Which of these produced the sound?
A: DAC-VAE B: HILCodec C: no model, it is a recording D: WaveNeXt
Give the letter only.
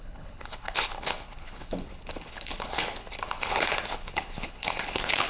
B